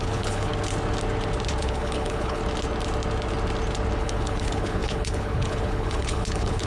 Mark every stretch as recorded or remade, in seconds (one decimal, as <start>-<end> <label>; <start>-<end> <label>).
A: 0.0-0.5 remade; 0.5-1.6 recorded; 1.6-2.4 remade; 2.4-4.0 recorded; 4.0-6.7 remade